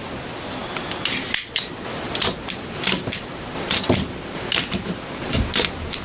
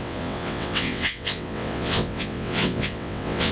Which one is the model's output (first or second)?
second